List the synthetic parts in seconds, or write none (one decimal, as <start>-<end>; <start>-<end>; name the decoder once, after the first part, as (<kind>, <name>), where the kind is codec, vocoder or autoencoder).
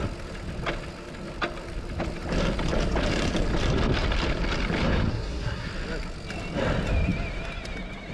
5.1-5.7 (codec, SNAC)